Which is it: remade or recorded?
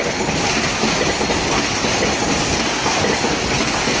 recorded